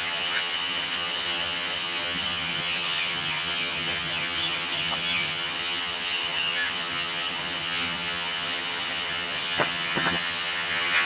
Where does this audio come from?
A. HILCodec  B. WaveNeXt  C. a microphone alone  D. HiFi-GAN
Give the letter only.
D